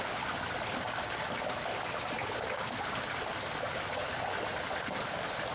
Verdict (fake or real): real